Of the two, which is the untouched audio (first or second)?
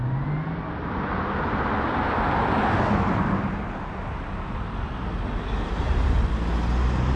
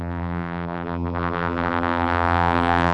first